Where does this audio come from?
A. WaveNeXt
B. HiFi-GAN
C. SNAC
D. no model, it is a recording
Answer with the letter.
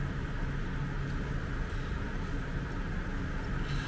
D